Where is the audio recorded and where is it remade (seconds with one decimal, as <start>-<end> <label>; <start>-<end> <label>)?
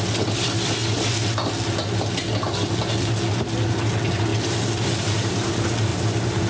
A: 0.0-4.3 recorded; 4.3-5.5 remade; 5.5-5.9 recorded; 5.9-6.5 remade